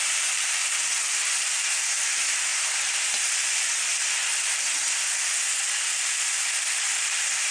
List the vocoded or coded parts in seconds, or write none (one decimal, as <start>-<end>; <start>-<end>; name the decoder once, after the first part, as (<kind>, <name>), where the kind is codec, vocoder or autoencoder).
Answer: 0.0-0.6 (vocoder, BigVGAN v2); 1.7-2.5; 6.7-7.5